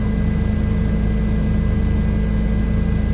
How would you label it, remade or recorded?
recorded